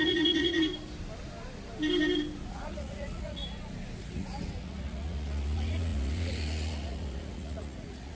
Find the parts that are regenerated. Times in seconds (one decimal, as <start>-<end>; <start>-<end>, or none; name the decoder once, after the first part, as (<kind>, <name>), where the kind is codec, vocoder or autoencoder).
0.0-0.7 (vocoder, Vocos); 2.5-3.4; 4.0-8.2